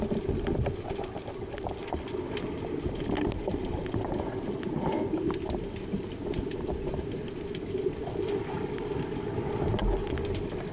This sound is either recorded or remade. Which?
recorded